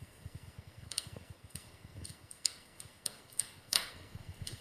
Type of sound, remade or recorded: remade